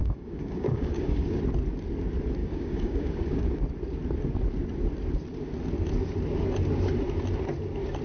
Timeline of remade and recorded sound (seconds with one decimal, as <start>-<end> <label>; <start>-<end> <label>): 0.0-1.4 remade; 1.4-2.4 recorded; 2.4-3.5 remade; 3.5-8.0 recorded